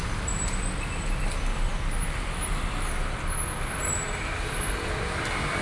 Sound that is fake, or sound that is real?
real